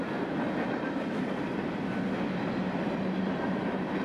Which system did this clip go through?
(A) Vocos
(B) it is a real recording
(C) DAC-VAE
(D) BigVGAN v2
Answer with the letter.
B